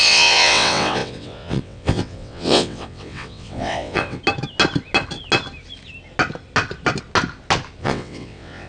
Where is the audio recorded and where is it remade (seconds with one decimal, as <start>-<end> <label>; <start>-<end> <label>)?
0.0-4.2 remade; 4.2-7.8 recorded; 7.8-8.7 remade